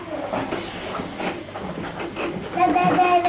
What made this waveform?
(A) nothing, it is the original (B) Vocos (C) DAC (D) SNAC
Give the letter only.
A